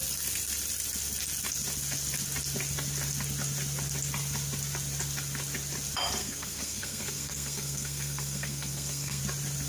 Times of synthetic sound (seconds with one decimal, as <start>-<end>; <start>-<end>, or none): 6.2-9.2